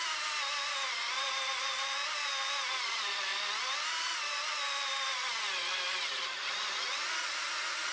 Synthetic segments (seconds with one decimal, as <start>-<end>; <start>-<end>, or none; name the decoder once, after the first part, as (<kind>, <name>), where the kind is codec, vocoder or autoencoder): none